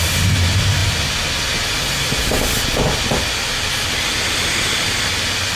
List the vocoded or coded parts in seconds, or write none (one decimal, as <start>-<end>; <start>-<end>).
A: none